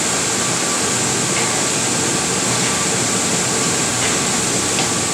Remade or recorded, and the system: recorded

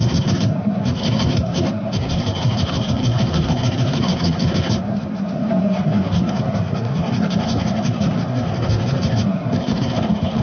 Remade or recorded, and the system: remade, codec, SNAC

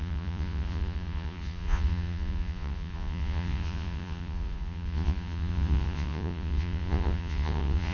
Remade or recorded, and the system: remade, vocoder, Vocos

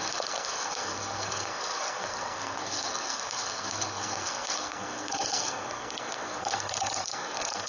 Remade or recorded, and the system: remade, codec, SNAC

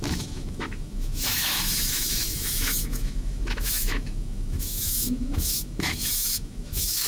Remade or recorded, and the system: remade, autoencoder, DAC-VAE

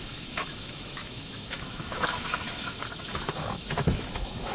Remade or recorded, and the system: remade, autoencoder, DAC-VAE